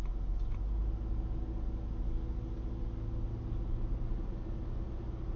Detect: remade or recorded recorded